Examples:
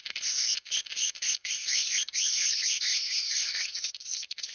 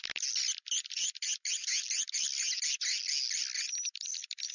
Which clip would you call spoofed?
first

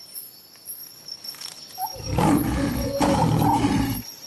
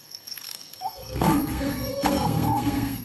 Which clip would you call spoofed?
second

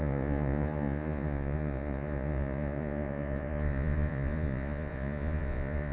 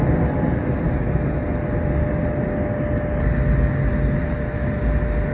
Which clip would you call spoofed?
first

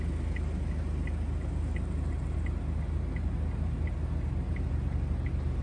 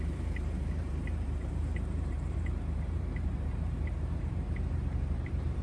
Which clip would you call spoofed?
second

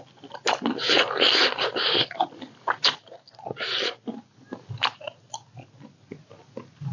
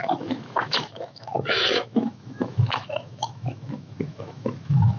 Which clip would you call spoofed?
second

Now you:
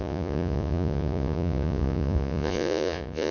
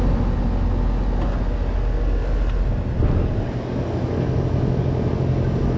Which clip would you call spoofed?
first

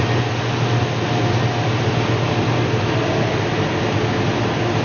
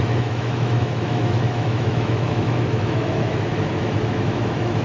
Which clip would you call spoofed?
second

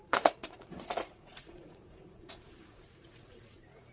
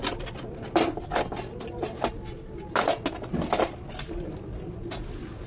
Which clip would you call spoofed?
first